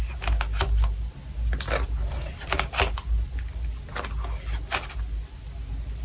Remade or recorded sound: recorded